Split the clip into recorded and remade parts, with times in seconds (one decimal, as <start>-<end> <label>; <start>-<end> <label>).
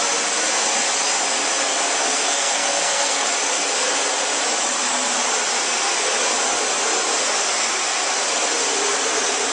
0.0-2.0 recorded; 2.0-3.3 remade; 3.3-9.5 recorded